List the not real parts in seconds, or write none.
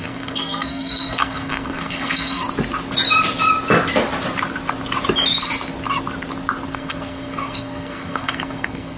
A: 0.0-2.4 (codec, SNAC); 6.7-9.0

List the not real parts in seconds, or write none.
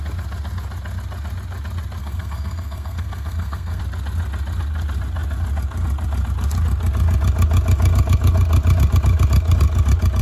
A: 2.0-3.8 (codec, SNAC)